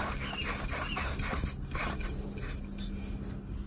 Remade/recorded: recorded